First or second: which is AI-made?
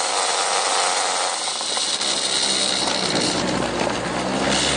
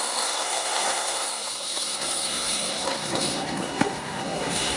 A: second